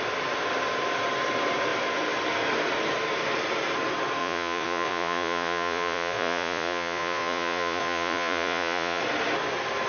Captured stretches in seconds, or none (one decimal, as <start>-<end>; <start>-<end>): 0.0-4.2; 9.0-9.9